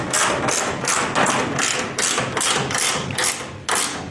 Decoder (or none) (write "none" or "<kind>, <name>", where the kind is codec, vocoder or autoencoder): none